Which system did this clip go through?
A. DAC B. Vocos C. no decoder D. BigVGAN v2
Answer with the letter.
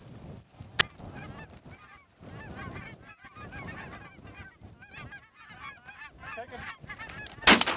C